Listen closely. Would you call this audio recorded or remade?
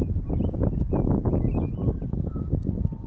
recorded